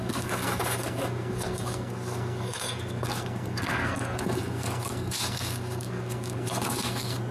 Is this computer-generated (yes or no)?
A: yes